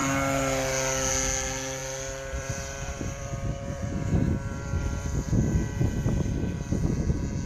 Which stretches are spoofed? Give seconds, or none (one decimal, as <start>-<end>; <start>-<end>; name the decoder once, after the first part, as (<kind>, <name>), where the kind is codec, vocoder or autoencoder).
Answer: 1.8-6.3 (vocoder, BigVGAN v2)